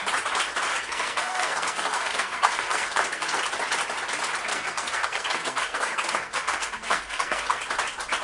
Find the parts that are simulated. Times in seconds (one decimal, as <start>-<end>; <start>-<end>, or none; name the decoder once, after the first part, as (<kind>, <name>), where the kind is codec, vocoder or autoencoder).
0.7-3.4 (codec, SNAC); 4.5-7.6